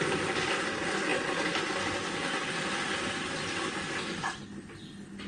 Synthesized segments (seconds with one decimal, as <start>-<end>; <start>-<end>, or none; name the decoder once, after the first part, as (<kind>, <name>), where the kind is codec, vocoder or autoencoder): none